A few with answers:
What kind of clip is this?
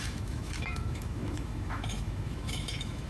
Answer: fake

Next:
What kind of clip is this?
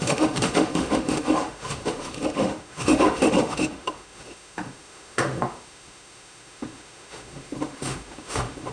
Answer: fake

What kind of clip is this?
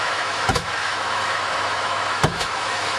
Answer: fake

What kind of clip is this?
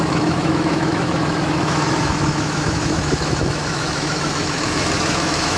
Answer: fake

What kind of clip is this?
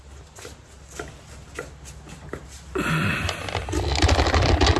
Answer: real